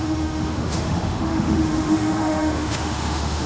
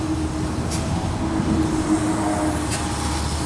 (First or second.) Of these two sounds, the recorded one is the second